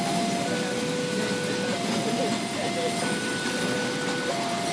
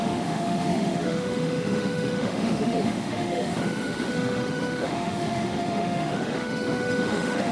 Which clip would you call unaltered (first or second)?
first